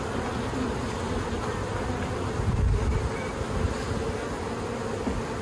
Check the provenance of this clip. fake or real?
real